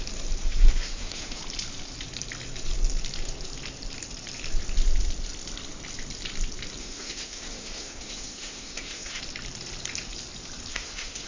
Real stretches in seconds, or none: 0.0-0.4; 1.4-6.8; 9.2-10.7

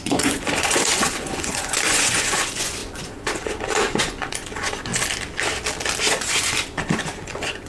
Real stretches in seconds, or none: 4.9-6.1

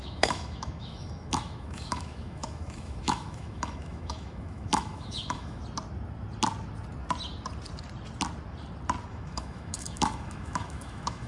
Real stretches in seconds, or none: 5.6-9.1

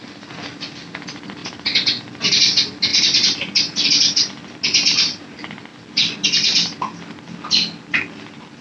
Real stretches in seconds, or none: 0.0-8.6

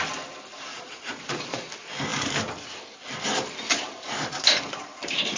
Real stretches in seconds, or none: 0.0-0.7; 1.7-5.4

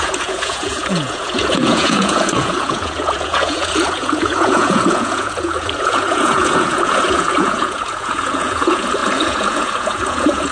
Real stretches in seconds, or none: none